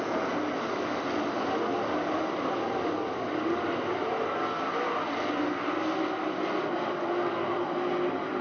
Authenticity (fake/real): real